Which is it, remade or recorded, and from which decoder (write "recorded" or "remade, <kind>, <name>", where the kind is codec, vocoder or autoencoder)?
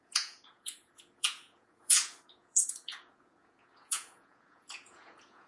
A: remade, vocoder, Vocos